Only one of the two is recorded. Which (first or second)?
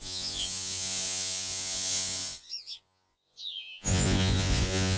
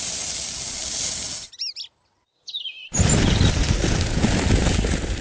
second